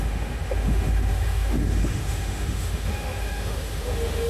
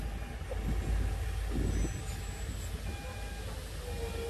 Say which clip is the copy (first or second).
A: first